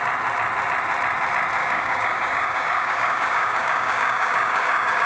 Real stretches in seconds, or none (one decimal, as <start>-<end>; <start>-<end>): 0.0-1.6